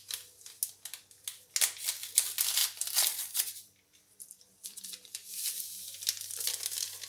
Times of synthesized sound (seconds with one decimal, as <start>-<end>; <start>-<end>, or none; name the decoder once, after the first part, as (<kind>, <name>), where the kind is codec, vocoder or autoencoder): 2.6-5.6 (vocoder, BigVGAN v2)